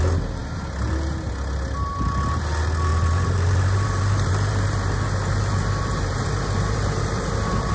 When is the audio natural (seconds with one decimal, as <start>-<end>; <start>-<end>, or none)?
0.0-2.9